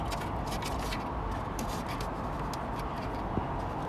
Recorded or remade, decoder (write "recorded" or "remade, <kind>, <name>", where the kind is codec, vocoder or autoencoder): recorded